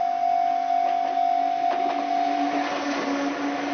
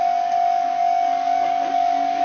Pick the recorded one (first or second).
first